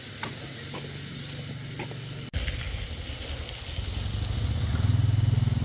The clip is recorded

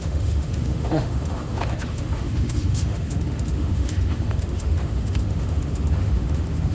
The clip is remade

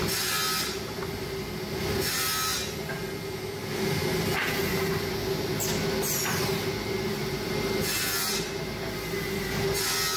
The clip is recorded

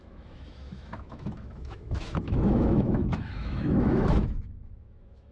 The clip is remade